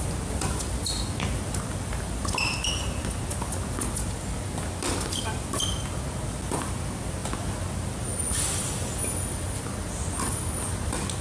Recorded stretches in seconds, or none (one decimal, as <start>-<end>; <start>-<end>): 0.0-11.2